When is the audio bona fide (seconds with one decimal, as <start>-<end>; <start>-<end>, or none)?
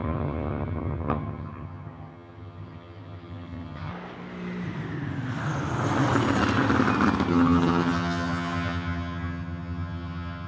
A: 3.9-7.3